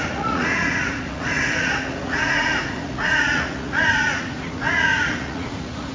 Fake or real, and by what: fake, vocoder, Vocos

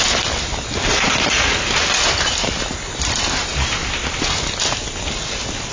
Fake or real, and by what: real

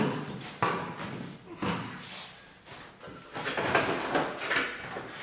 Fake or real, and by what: real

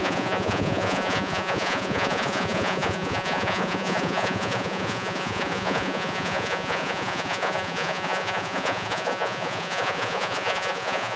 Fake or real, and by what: fake, vocoder, Vocos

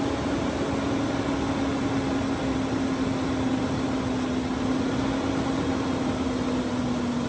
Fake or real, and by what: real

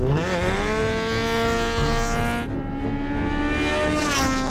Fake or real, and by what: real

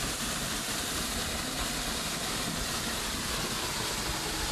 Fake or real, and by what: real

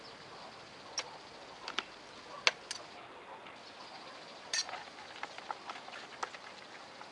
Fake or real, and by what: real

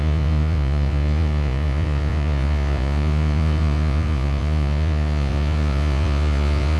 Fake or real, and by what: fake, vocoder, Vocos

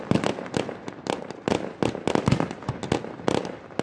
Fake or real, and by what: real